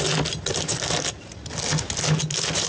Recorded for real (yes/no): yes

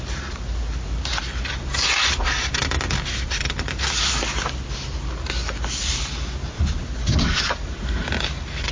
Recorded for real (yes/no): yes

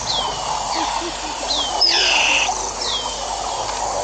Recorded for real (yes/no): yes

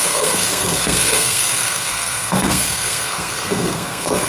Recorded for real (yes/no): no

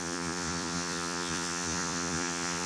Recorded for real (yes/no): no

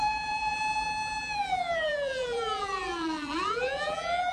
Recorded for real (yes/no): no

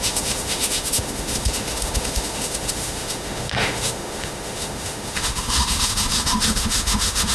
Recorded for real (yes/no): no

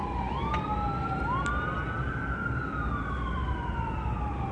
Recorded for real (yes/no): yes